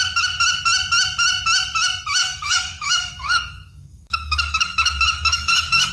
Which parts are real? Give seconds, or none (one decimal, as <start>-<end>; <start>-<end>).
0.0-2.2